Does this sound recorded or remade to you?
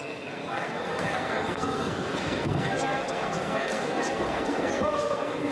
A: remade